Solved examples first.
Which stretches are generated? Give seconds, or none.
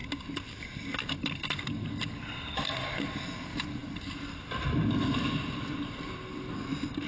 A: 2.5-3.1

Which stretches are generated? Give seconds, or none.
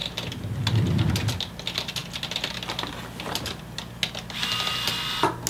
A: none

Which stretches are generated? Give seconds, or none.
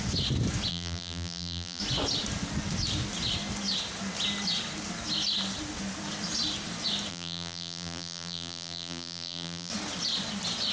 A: 0.7-1.8; 7.1-9.7